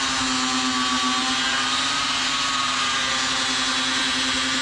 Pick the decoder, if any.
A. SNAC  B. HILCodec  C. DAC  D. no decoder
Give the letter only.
D